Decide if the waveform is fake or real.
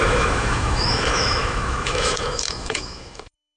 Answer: fake